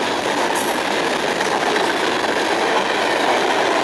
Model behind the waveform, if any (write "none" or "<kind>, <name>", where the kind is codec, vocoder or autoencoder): none